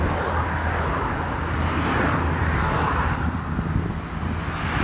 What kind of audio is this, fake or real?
real